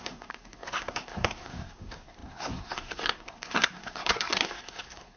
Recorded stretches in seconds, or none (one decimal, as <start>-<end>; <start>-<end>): none